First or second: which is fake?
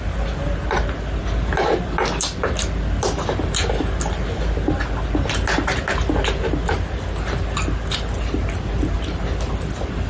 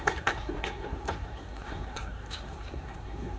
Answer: second